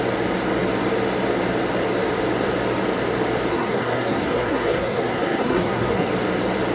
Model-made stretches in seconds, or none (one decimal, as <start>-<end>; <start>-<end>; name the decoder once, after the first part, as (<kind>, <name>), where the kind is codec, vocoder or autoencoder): 3.5-6.1 (codec, SNAC)